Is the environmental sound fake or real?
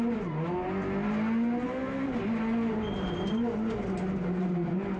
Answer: real